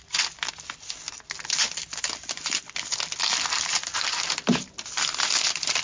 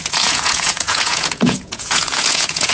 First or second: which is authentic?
first